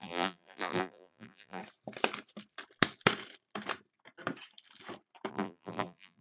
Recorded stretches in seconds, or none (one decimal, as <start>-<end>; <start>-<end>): 1.6-5.3